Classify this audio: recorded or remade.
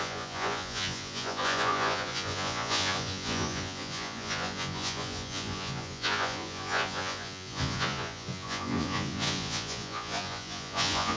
remade